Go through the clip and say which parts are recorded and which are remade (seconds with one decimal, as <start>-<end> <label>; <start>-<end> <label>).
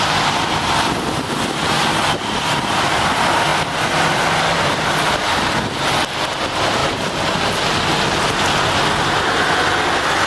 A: 0.0-3.5 remade; 3.5-4.9 recorded; 4.9-6.8 remade; 6.8-9.8 recorded; 9.8-10.3 remade